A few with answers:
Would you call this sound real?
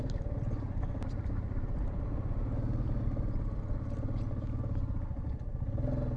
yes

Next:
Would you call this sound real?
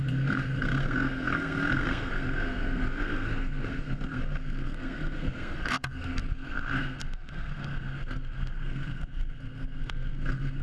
no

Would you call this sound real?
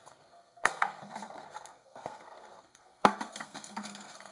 no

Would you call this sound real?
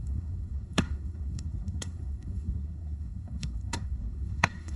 no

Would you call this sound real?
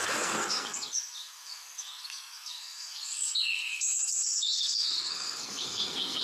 no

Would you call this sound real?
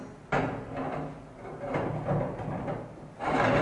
yes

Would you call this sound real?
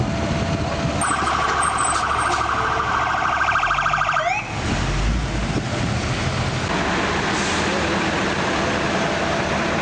yes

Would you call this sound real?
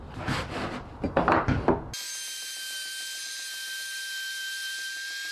yes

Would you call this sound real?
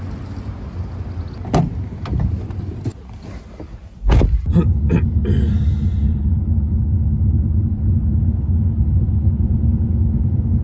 yes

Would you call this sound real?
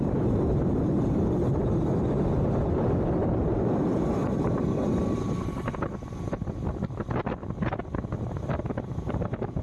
yes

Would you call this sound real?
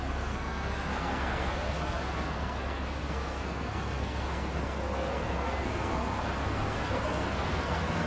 no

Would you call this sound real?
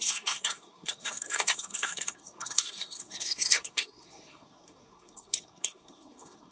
no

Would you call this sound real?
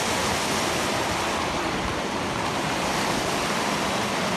yes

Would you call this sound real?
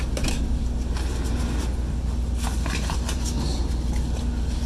yes